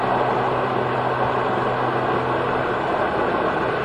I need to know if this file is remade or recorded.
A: recorded